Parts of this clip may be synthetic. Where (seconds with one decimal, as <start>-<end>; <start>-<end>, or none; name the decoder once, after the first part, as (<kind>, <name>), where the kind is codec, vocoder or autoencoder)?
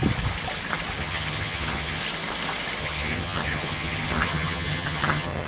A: 1.0-2.0 (vocoder, HiFi-GAN); 2.8-5.5